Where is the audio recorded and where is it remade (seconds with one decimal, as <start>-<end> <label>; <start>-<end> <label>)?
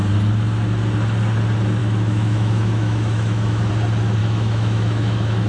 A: 0.0-1.8 recorded; 1.8-3.7 remade; 3.7-4.2 recorded; 4.2-5.5 remade